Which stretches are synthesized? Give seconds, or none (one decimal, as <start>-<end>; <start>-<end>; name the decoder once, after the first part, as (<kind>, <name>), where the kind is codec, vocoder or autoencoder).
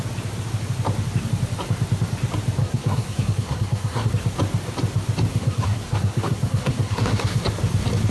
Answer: 2.6-4.1 (codec, SNAC); 5.4-7.4